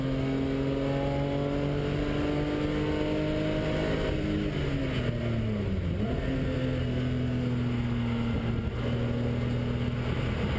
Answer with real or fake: real